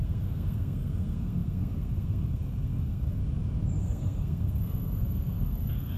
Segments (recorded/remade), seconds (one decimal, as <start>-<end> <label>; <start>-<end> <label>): 0.0-3.2 remade; 3.2-3.8 recorded; 3.8-6.0 remade